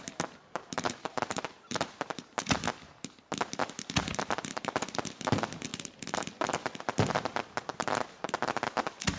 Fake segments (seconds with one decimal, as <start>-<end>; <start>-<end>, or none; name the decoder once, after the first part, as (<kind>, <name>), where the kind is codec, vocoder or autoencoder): 0.6-1.9 (vocoder, BigVGAN v2)